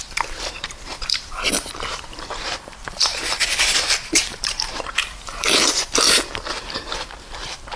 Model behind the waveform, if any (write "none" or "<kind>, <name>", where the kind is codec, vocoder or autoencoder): vocoder, BigVGAN v2